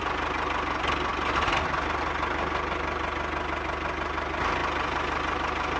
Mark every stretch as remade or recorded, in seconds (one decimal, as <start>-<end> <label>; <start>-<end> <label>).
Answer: 0.0-5.8 recorded